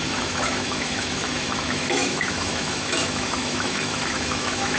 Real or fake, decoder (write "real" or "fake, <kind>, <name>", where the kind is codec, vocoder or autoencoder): fake, autoencoder, DAC-VAE